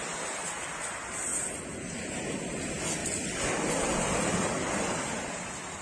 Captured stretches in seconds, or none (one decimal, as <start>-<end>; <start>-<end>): 0.0-5.8